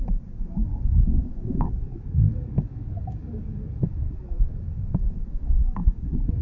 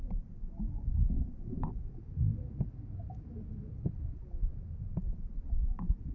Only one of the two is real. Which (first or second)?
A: second